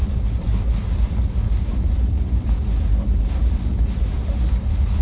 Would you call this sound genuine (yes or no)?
yes